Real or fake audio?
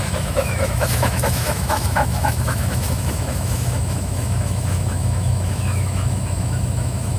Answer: fake